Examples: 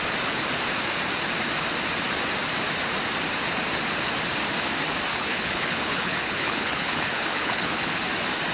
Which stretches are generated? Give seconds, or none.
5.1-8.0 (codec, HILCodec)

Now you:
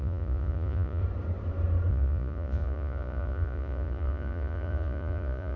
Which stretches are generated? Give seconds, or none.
0.0-1.0 (vocoder, Vocos); 1.9-5.6

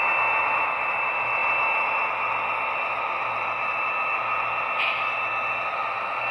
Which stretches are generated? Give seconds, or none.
none

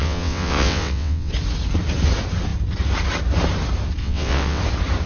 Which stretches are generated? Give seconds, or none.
0.0-1.3 (vocoder, WaveNeXt); 4.0-4.6

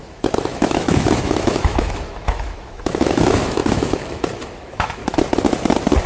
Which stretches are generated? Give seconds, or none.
0.0-5.0 (autoencoder, DAC-VAE)

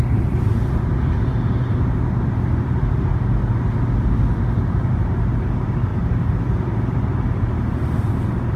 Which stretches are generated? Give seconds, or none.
0.0-3.1 (vocoder, BigVGAN v2); 4.7-8.6